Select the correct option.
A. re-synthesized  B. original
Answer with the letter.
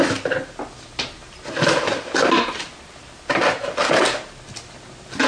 B